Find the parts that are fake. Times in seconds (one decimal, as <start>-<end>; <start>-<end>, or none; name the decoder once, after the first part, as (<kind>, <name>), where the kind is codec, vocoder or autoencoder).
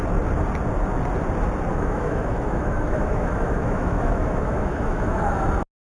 1.7-5.2 (autoencoder, DAC-VAE)